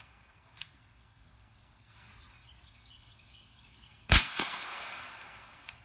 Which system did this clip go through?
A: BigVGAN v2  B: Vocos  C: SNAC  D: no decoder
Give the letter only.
C